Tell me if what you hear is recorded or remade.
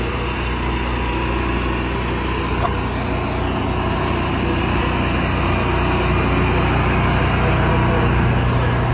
recorded